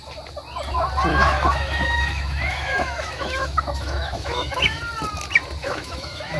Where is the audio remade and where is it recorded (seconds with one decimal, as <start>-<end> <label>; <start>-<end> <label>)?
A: 0.0-1.1 recorded; 1.1-4.8 remade; 4.8-5.6 recorded; 5.6-6.4 remade